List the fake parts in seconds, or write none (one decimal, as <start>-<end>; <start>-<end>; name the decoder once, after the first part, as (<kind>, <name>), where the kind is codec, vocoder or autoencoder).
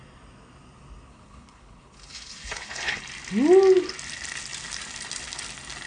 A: 1.1-3.0 (codec, HILCodec)